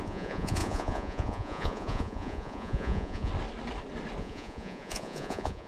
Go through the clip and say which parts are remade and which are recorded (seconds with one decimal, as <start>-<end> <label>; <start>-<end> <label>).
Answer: 0.0-3.3 remade; 3.3-4.2 recorded; 4.2-5.7 remade